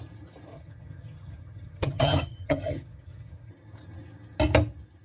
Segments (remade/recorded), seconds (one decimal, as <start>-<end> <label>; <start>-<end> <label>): 0.0-0.5 recorded; 0.5-3.5 remade; 3.5-5.0 recorded